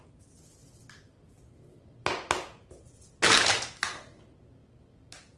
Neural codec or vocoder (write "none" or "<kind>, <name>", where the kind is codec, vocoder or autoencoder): none